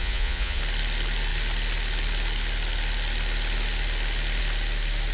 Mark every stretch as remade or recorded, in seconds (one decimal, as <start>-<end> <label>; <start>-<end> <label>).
0.0-0.6 remade; 0.6-5.1 recorded